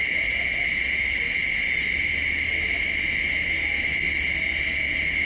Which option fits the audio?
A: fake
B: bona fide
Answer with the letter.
B